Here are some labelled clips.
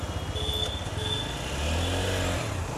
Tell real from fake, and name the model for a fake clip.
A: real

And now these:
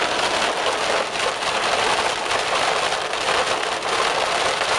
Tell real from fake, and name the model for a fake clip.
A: real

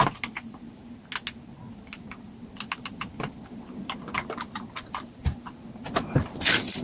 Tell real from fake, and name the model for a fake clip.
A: real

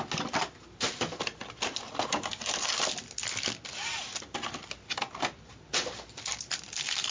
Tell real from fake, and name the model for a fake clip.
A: real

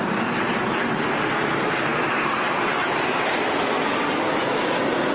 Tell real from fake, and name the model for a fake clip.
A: real